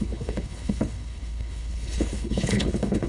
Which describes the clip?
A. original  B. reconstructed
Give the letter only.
B